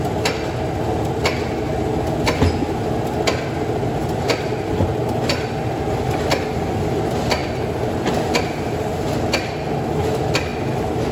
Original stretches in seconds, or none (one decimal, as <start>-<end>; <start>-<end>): 0.0-11.1